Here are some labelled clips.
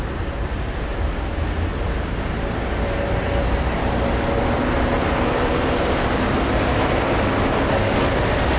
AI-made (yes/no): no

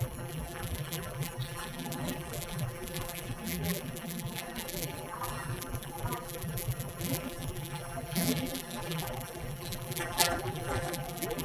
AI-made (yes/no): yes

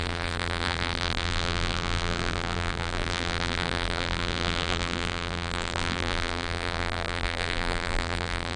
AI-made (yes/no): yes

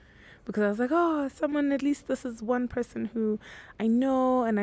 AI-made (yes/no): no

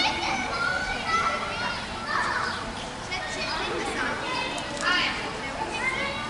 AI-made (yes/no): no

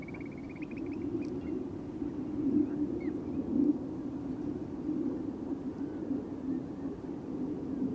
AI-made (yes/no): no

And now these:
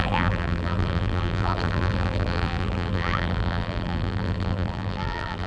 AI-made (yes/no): yes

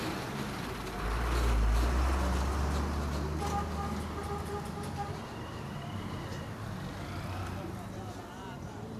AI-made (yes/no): no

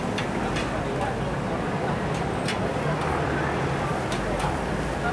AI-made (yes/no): no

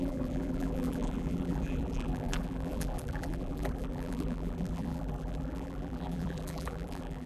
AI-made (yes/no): yes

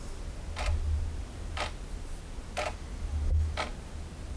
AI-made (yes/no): no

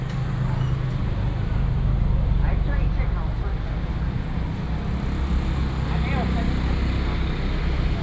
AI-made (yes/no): no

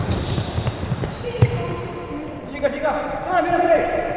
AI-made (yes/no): yes